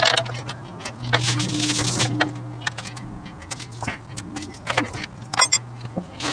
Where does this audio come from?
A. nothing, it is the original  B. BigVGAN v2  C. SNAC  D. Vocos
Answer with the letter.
A